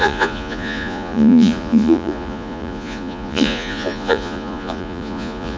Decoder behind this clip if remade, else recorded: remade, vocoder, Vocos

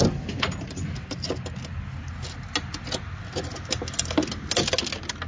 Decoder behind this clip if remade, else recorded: recorded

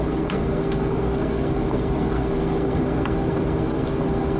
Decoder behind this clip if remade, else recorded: remade, codec, SNAC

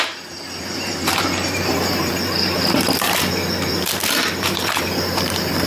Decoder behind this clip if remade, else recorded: remade, vocoder, BigVGAN v2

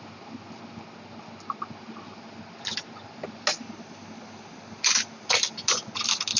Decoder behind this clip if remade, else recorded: recorded